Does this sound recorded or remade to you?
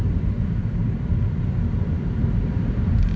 remade